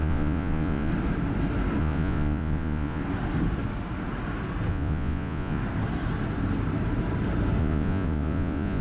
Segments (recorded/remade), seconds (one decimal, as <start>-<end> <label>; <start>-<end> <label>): 0.0-0.9 remade; 0.9-1.8 recorded; 1.8-3.0 remade; 3.0-4.7 recorded; 4.7-5.6 remade; 5.6-7.6 recorded; 7.6-8.8 remade